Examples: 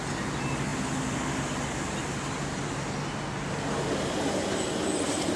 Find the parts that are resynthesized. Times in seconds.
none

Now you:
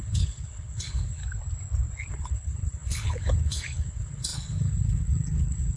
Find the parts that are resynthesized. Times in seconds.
0.0-1.2 (codec, HILCodec); 2.1-5.8

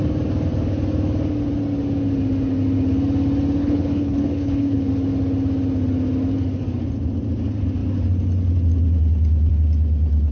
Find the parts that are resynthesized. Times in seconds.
3.6-4.9 (codec, HILCodec)

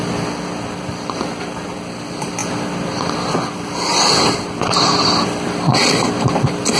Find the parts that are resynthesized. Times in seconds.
none

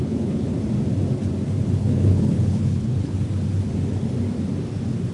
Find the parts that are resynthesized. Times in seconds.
0.0-0.5 (codec, HILCodec); 1.8-3.2

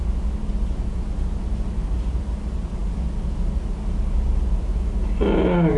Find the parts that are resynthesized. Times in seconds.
none

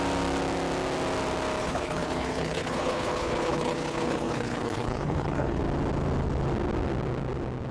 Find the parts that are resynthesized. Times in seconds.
1.6-5.6 (codec, HILCodec)